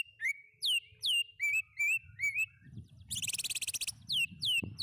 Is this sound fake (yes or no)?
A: no